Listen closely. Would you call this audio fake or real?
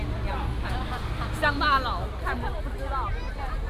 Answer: real